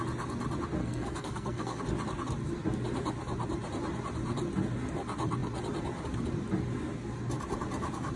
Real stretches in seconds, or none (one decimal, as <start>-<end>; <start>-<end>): 0.0-0.8; 1.8-8.2